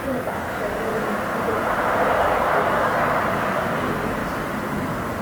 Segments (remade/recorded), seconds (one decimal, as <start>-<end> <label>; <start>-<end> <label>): 0.0-0.9 remade; 0.9-2.2 recorded; 2.2-4.2 remade; 4.2-5.2 recorded